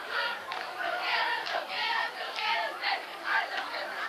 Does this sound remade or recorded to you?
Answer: remade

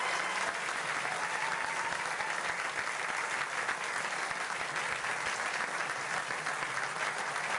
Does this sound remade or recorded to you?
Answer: recorded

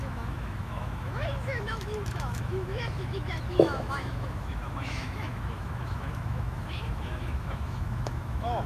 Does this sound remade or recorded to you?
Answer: remade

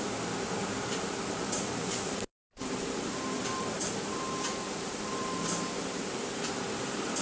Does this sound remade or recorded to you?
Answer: remade